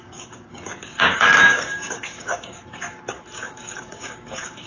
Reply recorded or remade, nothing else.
remade